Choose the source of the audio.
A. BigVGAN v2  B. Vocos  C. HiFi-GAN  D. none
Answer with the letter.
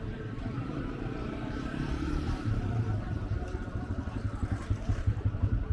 A